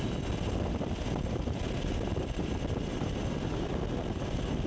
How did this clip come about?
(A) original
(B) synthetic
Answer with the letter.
A